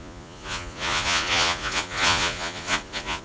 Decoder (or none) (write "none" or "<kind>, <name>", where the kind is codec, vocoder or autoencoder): vocoder, Vocos